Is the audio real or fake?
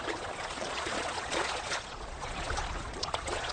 fake